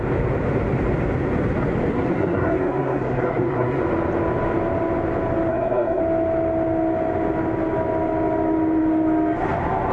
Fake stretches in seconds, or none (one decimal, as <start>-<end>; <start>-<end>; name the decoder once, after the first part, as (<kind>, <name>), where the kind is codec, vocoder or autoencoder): 1.9-3.8 (codec, SNAC); 5.5-6.0